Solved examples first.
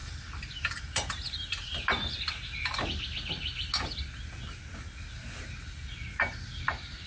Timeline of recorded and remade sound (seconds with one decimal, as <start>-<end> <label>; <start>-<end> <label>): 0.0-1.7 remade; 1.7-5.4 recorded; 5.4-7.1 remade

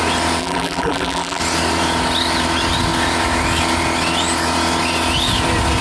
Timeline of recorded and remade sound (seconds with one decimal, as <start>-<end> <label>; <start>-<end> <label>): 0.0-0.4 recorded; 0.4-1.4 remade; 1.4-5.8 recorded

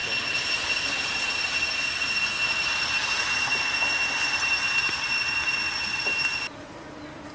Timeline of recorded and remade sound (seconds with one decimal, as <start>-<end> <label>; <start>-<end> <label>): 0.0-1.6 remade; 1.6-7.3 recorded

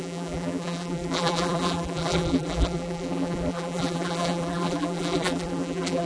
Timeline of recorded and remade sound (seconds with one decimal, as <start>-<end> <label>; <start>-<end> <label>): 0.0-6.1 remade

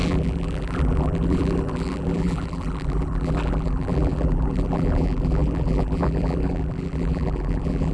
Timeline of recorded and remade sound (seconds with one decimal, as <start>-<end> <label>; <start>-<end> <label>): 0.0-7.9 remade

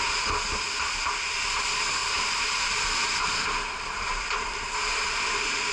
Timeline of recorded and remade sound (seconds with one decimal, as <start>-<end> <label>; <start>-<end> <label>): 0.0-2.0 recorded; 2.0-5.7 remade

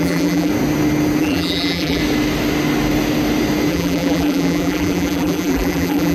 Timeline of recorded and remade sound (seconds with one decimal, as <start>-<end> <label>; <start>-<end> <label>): 0.0-0.5 remade; 0.5-1.2 recorded; 1.2-2.0 remade; 2.0-3.7 recorded; 3.7-6.1 remade